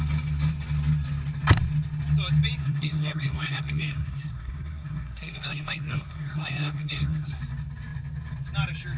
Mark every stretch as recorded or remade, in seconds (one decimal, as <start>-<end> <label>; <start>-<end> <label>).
0.0-2.6 recorded; 2.6-7.4 remade; 7.4-9.0 recorded